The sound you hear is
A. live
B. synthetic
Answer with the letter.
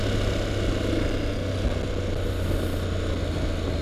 A